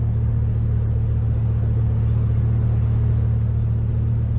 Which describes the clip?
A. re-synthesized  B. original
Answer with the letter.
B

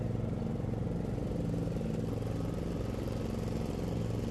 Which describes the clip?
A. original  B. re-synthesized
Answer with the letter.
A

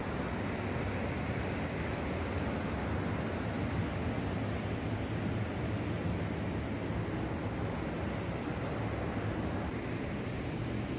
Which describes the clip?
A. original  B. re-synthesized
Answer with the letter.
A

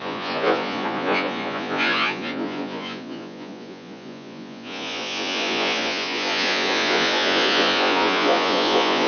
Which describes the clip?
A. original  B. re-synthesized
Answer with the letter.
B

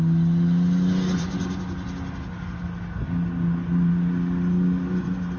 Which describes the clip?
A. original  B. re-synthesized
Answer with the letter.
A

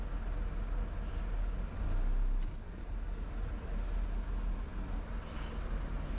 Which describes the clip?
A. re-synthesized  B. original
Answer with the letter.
B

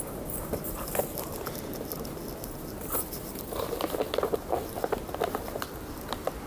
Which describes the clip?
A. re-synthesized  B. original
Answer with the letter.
B